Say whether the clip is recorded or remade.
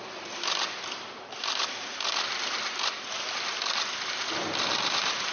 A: remade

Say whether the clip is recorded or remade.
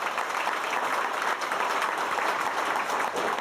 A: recorded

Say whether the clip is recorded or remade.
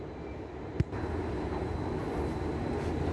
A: recorded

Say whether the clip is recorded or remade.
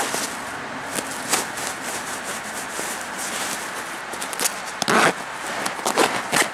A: recorded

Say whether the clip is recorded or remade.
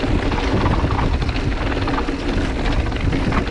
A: recorded